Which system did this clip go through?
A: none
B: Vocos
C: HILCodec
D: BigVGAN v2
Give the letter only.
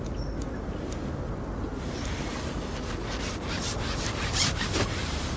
A